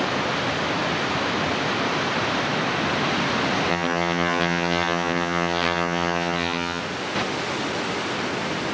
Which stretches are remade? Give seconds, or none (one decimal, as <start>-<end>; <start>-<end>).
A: 3.7-6.8